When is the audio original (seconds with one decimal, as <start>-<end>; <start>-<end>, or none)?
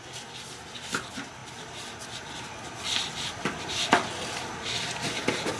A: 0.0-5.6